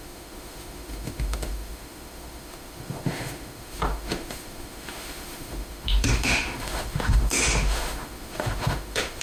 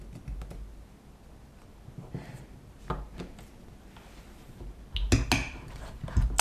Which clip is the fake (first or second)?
first